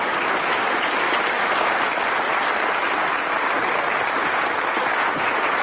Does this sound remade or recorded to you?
recorded